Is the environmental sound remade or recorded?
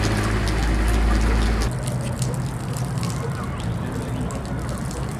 recorded